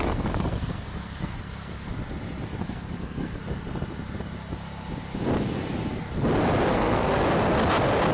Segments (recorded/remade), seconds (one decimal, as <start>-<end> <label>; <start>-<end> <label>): 0.0-1.9 remade; 1.9-2.6 recorded; 2.6-3.4 remade; 3.4-6.7 recorded; 6.7-7.2 remade; 7.2-8.1 recorded